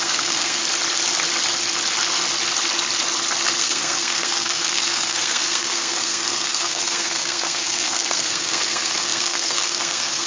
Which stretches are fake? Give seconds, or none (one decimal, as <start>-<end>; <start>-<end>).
0.0-0.6; 3.6-10.3